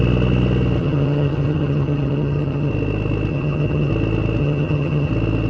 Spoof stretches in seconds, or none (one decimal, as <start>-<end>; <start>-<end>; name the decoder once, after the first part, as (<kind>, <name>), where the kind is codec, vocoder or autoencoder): 0.8-2.7 (vocoder, HiFi-GAN); 3.3-3.9; 4.4-5.1